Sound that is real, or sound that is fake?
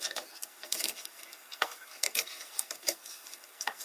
fake